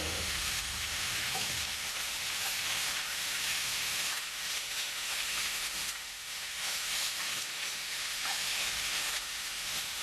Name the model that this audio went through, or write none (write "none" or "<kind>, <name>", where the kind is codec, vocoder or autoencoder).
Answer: autoencoder, DAC-VAE